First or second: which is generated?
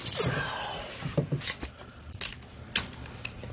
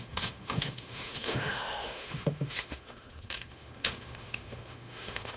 second